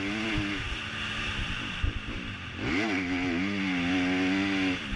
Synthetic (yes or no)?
no